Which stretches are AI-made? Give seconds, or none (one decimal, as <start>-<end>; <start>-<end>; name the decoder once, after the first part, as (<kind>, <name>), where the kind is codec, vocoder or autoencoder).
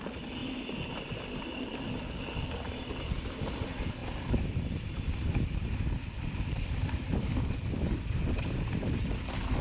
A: 4.0-7.4 (vocoder, BigVGAN v2)